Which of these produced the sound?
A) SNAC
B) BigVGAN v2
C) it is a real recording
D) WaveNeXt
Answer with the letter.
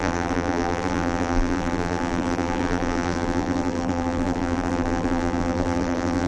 B